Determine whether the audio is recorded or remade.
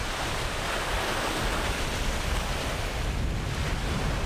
recorded